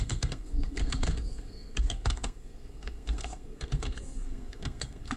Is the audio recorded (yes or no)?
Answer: no